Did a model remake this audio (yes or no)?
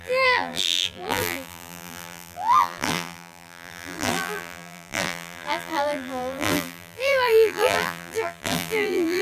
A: yes